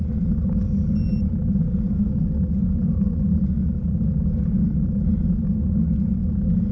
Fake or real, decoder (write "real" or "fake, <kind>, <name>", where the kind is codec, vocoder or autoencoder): real